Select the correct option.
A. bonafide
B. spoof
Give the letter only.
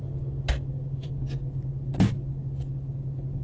A